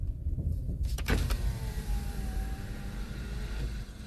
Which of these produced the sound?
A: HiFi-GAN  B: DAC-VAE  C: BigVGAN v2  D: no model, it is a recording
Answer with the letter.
C